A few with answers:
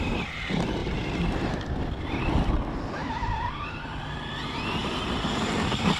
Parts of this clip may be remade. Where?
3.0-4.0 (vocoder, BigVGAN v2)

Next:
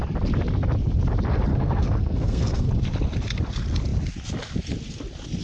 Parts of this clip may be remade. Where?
1.5-2.7 (codec, SNAC)

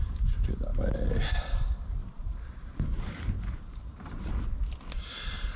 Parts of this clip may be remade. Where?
2.0-4.3 (vocoder, BigVGAN v2)